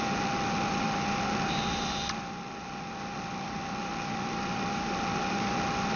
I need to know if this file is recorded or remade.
recorded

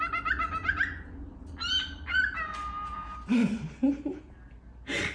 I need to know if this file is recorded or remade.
recorded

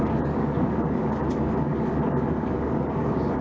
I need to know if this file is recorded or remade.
remade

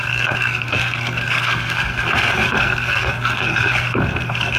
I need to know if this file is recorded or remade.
remade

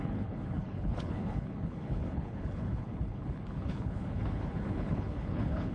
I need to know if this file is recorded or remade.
remade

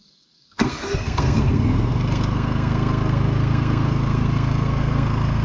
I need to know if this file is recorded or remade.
remade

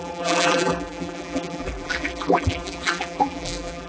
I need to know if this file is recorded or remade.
remade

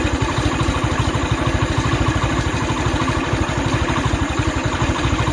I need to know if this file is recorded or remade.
recorded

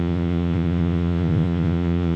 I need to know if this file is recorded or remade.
remade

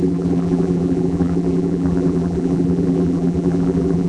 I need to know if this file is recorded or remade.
remade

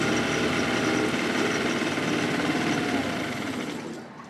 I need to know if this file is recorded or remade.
recorded